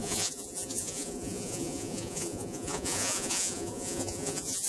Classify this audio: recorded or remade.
remade